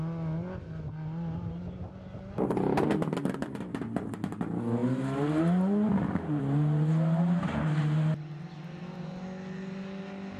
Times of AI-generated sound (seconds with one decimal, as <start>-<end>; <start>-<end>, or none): none